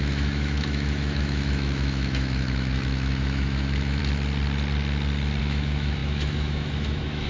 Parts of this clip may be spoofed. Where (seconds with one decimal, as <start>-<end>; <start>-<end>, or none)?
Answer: 0.0-4.0; 5.4-7.3